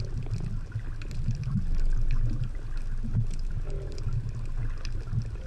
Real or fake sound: real